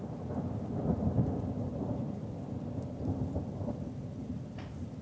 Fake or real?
real